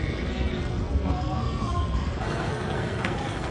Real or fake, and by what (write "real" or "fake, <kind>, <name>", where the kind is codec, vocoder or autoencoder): fake, codec, SNAC